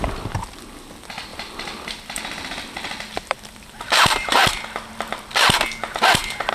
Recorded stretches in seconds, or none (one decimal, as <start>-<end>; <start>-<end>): 0.0-1.3; 4.5-6.5